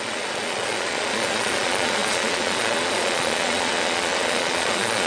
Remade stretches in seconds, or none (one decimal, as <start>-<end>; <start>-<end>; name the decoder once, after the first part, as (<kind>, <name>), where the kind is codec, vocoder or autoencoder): 0.0-5.1 (vocoder, Vocos)

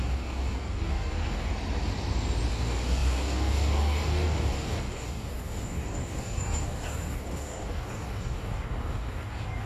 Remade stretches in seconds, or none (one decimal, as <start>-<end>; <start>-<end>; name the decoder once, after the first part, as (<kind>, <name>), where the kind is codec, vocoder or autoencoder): 0.0-1.5 (codec, DAC); 2.5-9.7

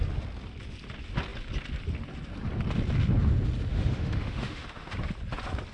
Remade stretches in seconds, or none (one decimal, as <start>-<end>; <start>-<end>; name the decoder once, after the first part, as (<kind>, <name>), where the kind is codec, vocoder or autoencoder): 3.7-4.9 (autoencoder, DAC-VAE)

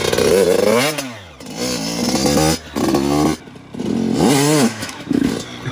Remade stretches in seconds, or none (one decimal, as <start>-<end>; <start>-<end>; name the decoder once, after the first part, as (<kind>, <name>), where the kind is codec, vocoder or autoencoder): 4.7-5.3 (autoencoder, DAC-VAE)

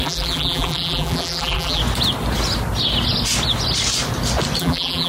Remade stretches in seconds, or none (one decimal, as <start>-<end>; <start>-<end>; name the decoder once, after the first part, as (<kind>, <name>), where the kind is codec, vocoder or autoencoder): 0.0-1.8 (vocoder, BigVGAN v2); 4.6-5.1

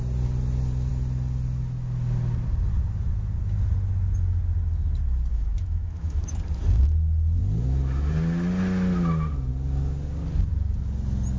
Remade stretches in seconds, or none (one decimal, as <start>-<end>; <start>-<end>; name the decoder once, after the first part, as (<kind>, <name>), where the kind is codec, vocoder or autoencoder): 5.3-6.3 (autoencoder, DAC-VAE)